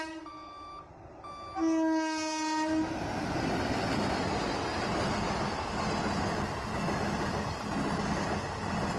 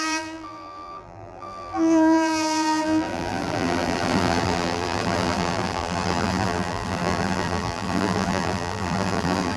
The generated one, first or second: second